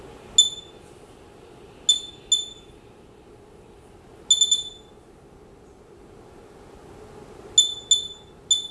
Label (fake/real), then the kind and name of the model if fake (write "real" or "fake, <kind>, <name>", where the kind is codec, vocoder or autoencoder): real